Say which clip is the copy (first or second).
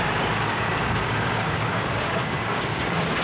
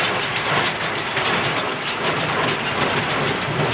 first